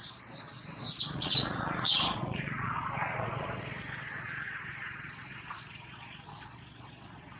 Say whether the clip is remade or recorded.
remade